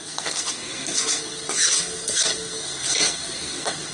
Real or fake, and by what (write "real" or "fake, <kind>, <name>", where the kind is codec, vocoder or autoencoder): fake, codec, SNAC